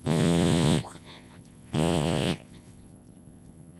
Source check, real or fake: fake